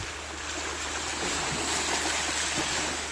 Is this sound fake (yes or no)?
no